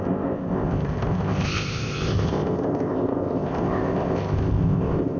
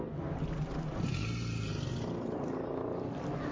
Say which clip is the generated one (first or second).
first